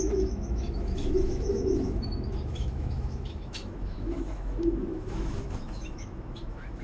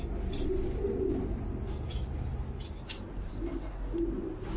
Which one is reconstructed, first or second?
first